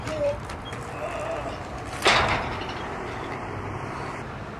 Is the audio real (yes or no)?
no